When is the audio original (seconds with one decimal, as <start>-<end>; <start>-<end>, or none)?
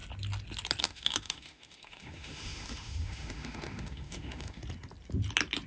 0.0-0.8; 4.6-5.7